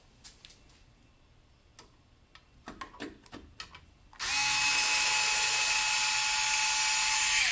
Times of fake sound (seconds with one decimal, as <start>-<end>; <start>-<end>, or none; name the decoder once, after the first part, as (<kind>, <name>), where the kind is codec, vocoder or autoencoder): 4.4-5.1 (autoencoder, DAC-VAE)